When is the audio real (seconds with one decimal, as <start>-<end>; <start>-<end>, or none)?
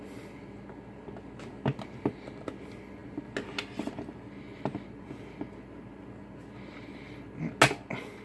0.0-8.2